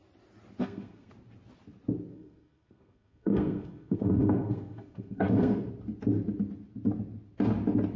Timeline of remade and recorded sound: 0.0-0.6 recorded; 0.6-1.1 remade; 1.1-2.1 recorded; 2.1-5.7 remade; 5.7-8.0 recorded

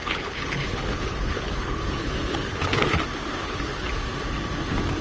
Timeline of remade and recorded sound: 0.0-3.0 remade; 3.0-3.4 recorded; 3.4-3.9 remade; 3.9-5.0 recorded